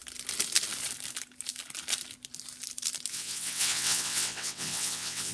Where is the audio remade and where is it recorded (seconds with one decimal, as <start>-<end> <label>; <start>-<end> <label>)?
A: 0.0-3.1 recorded; 3.1-5.3 remade